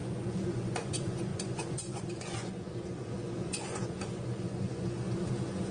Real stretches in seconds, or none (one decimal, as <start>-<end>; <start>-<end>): none